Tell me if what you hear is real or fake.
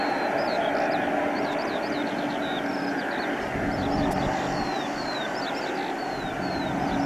real